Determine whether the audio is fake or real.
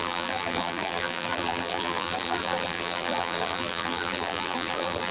fake